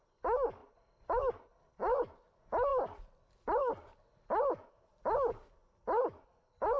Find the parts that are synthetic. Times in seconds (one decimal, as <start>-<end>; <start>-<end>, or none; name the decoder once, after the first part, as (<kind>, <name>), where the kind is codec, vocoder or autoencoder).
none